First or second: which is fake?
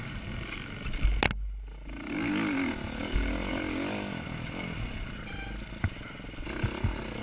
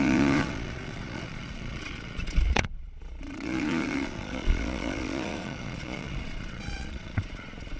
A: second